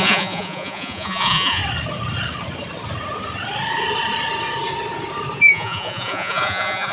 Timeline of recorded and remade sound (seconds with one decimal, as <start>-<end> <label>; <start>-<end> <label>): 0.0-1.6 remade; 1.6-5.5 recorded; 5.5-6.9 remade

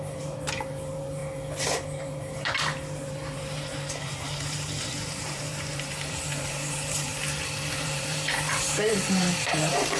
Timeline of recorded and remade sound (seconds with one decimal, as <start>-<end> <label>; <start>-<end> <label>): 0.0-1.2 remade; 1.2-2.0 recorded; 2.0-7.1 remade; 7.1-7.7 recorded; 7.7-10.0 remade

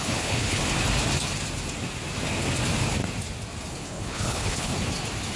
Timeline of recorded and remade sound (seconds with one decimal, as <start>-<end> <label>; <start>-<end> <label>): 0.0-0.6 remade; 0.6-3.7 recorded; 3.7-4.7 remade; 4.7-5.4 recorded

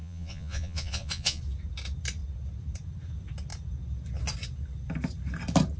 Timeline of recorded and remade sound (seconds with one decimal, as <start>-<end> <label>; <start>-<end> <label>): 0.0-1.4 remade; 1.4-5.8 recorded